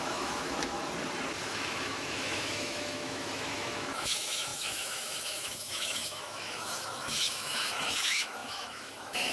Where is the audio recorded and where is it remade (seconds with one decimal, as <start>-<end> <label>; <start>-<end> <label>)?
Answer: 0.0-0.8 remade; 0.8-1.4 recorded; 1.4-9.3 remade